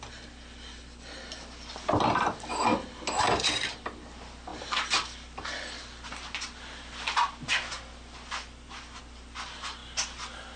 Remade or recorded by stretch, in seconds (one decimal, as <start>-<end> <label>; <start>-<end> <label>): 0.0-10.6 recorded

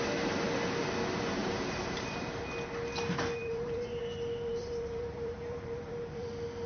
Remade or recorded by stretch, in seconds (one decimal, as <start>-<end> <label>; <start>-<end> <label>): 0.0-1.4 recorded; 1.4-2.4 remade; 2.4-3.4 recorded; 3.4-4.0 remade; 4.0-4.5 recorded; 4.5-6.3 remade; 6.3-6.7 recorded